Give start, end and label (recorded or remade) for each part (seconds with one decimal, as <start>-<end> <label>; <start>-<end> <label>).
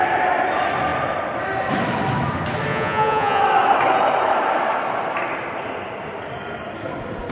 0.0-2.7 recorded; 2.7-3.4 remade; 3.4-7.3 recorded